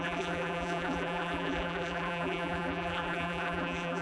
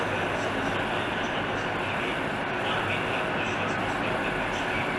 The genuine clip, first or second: second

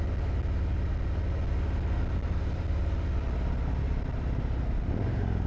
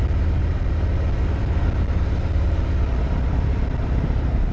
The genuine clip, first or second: first